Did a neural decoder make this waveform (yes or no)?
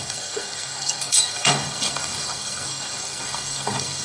yes